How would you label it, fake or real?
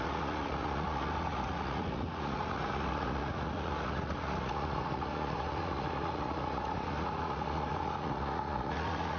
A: fake